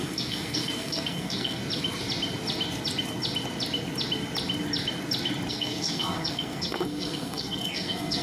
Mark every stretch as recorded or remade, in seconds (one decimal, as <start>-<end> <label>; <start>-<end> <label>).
0.0-1.6 remade; 1.6-5.5 recorded; 5.5-8.2 remade